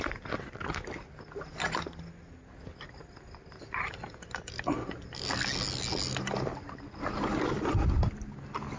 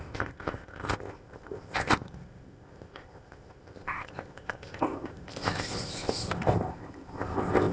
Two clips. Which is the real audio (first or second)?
first